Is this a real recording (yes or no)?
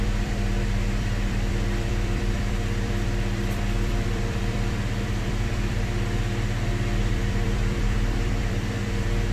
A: no